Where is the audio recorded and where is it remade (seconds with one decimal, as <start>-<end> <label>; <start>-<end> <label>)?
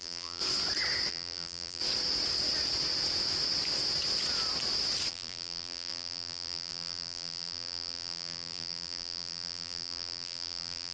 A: 0.0-0.4 remade; 0.4-1.1 recorded; 1.1-1.8 remade; 1.8-5.1 recorded; 5.1-10.9 remade